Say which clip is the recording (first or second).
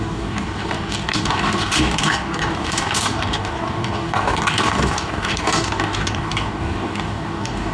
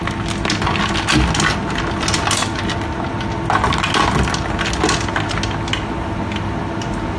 second